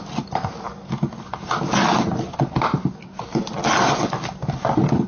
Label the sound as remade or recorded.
recorded